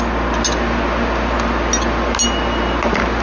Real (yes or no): yes